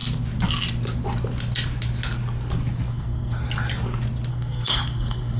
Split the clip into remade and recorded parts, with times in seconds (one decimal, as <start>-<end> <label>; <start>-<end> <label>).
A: 0.0-2.9 recorded; 2.9-3.4 remade; 3.4-4.3 recorded; 4.3-5.4 remade